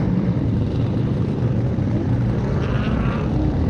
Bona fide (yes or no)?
no